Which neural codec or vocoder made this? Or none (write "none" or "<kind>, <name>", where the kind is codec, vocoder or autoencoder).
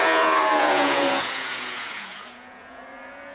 vocoder, Vocos